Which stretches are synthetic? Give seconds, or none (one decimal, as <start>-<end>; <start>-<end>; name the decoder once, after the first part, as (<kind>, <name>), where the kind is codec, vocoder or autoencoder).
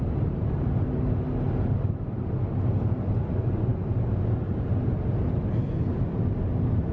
none